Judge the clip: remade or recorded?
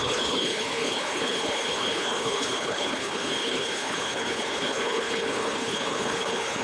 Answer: remade